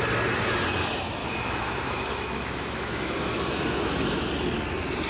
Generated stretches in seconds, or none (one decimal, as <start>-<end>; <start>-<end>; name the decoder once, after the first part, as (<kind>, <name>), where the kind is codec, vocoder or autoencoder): 1.2-4.3 (autoencoder, DAC-VAE)